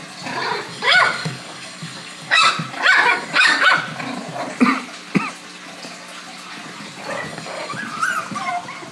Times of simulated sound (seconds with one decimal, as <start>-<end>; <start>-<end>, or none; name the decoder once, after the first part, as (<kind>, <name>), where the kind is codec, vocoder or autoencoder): 0.7-2.5 (codec, DAC); 3.1-3.7; 7.3-7.8